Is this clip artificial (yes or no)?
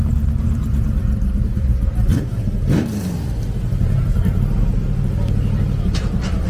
yes